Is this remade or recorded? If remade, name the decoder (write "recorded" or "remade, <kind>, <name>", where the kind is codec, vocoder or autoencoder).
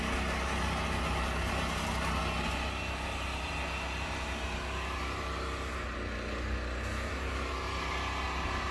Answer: recorded